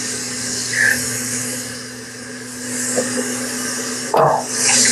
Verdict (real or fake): fake